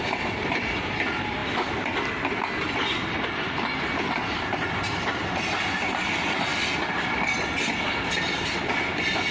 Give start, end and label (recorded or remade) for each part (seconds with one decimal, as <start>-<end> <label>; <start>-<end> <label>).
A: 0.0-9.3 recorded